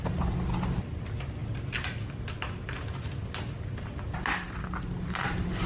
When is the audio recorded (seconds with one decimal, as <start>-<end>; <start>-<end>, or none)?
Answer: 0.0-5.7